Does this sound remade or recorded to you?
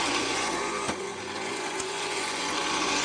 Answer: remade